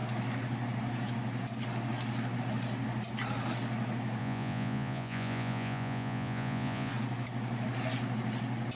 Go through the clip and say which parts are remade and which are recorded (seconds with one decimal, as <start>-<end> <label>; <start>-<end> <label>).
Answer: 0.0-4.2 recorded; 4.2-6.9 remade; 6.9-8.8 recorded